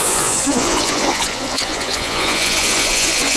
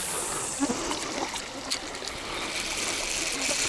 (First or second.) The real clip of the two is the second